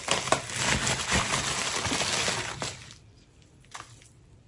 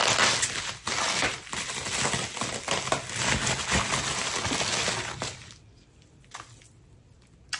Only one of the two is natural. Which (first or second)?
second